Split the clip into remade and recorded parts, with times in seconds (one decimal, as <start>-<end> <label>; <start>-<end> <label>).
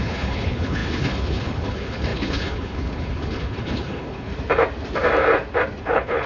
0.0-4.3 remade; 4.3-5.8 recorded; 5.8-6.3 remade